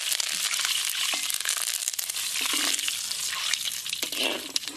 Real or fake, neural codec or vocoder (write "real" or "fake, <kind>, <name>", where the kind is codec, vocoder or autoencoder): real